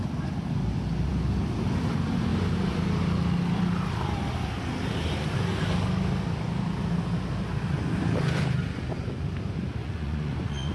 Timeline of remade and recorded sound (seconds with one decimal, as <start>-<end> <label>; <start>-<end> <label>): 0.0-9.8 recorded; 9.8-10.7 remade